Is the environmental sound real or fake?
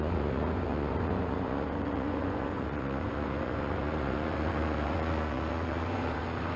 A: fake